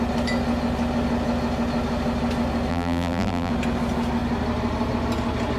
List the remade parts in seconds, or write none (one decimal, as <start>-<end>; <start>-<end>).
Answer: 2.7-3.5